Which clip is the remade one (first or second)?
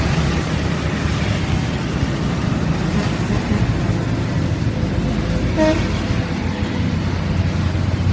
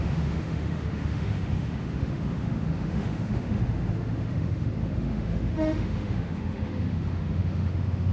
second